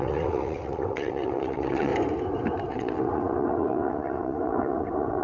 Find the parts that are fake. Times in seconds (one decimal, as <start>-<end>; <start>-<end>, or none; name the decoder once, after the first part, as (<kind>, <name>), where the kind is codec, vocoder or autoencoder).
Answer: 0.0-1.9 (vocoder, WaveNeXt); 2.7-5.2